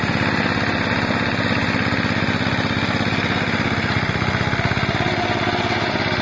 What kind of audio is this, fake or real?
real